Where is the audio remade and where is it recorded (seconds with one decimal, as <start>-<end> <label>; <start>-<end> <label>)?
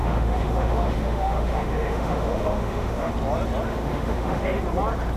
0.0-3.1 remade; 3.1-3.7 recorded; 3.7-4.6 remade; 4.6-5.2 recorded